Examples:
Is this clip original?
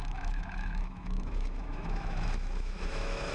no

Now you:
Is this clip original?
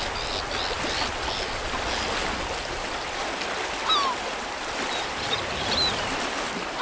yes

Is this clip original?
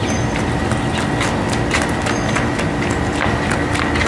yes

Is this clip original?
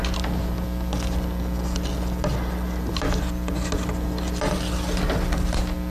yes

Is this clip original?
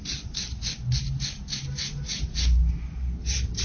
yes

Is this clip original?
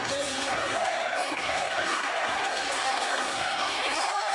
no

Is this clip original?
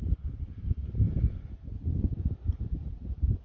yes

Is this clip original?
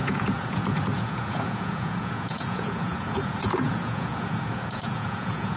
no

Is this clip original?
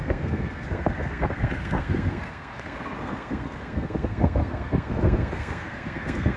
no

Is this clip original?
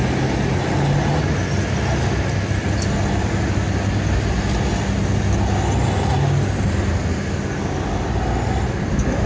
yes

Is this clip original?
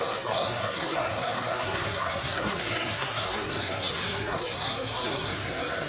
no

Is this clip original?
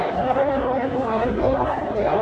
no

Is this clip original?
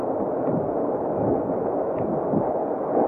yes